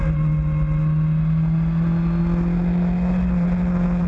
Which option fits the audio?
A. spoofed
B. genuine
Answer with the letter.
B